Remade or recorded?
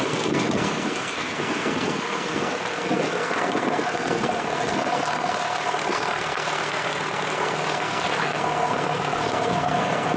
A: remade